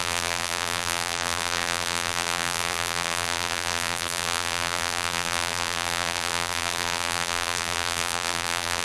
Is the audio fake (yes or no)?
yes